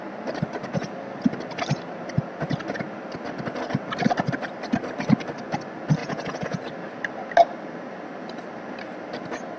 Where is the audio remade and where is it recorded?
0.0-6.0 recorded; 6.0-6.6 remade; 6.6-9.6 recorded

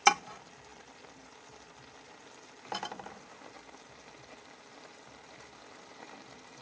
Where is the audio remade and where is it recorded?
0.0-6.6 recorded

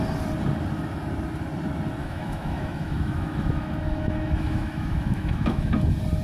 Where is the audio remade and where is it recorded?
0.0-2.0 recorded; 2.0-5.7 remade; 5.7-6.2 recorded

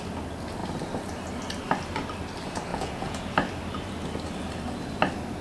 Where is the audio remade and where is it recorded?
0.0-2.7 recorded; 2.7-3.2 remade; 3.2-5.4 recorded